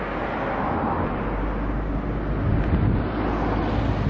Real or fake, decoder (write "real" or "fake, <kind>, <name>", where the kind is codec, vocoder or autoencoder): real